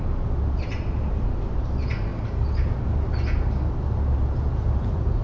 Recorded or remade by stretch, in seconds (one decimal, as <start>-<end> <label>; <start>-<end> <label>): 0.0-5.2 recorded